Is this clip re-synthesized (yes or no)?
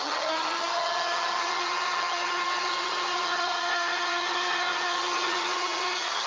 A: yes